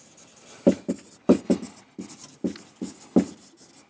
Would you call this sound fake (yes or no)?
no